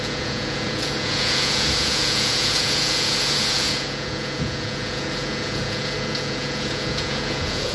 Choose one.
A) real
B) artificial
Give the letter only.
B